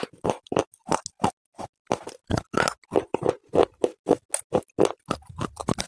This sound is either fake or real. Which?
real